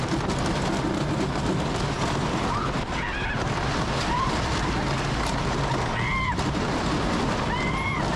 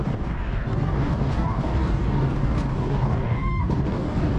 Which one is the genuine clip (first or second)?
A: first